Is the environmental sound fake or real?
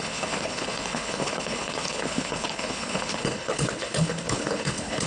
fake